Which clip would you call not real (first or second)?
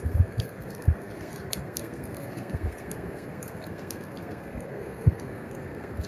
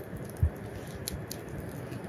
first